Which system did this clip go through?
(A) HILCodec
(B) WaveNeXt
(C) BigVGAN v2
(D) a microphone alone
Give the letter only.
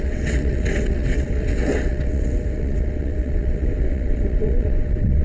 B